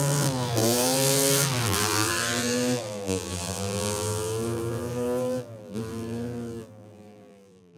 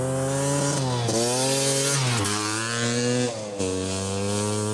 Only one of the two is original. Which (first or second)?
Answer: second